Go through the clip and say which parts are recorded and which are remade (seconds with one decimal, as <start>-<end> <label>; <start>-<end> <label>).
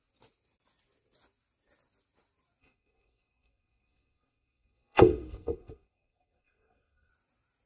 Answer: 0.0-2.6 recorded; 2.6-7.1 remade; 7.1-7.7 recorded